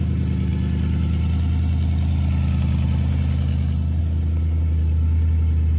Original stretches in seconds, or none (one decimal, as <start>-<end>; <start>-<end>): 0.0-5.8